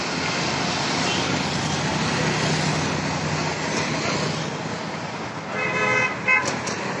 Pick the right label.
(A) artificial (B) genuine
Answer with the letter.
B